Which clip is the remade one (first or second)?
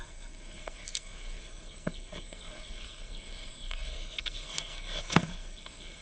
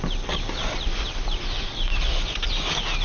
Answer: first